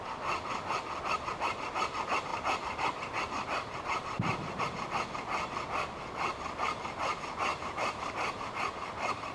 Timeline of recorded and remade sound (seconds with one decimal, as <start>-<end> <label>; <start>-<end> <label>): 0.0-2.3 recorded; 2.3-4.6 remade; 4.6-7.5 recorded; 7.5-8.5 remade; 8.5-9.3 recorded